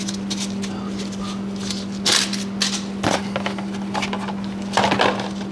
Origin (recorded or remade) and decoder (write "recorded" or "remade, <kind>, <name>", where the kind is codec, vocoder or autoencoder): recorded